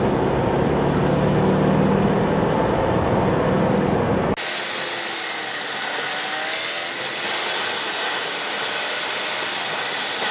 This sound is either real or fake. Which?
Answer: real